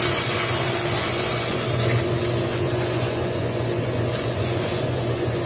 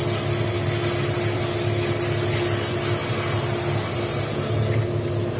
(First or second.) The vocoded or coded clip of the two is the first